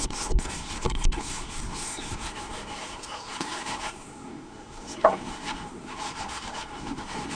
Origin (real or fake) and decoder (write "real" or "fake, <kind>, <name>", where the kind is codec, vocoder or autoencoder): fake, codec, SNAC